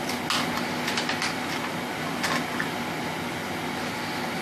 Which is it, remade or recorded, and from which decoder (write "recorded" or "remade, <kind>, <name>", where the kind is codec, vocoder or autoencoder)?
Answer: recorded